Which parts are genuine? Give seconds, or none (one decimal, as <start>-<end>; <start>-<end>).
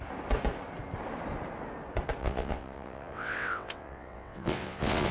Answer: 0.0-2.2